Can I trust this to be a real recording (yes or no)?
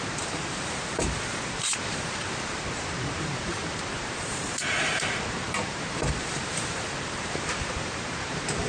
no